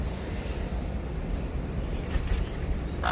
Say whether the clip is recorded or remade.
remade